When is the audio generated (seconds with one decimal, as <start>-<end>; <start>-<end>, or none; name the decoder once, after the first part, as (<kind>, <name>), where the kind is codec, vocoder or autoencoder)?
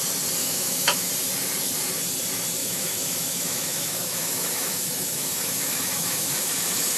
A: 0.4-1.1 (autoencoder, DAC-VAE); 2.6-7.0